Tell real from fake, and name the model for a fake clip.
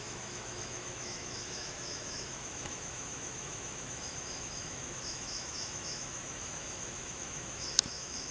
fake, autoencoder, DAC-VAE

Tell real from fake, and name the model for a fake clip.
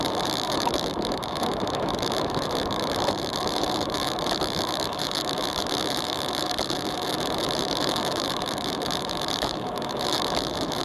fake, autoencoder, DAC-VAE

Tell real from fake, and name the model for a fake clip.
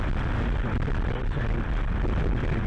real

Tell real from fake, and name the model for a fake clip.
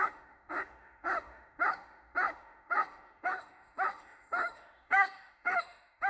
fake, autoencoder, DAC-VAE